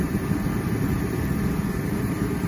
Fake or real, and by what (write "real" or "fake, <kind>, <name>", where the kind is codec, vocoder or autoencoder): fake, vocoder, BigVGAN v2